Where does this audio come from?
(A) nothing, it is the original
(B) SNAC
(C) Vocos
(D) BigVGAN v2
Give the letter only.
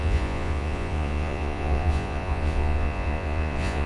C